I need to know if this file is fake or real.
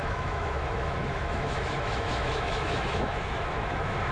fake